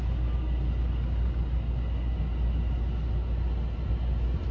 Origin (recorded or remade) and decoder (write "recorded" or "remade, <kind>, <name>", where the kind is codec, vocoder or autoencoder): recorded